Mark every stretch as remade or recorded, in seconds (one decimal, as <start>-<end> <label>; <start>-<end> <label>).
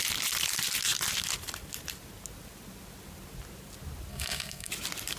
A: 0.0-4.1 recorded; 4.1-4.7 remade; 4.7-5.2 recorded